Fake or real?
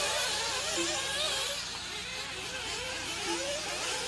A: real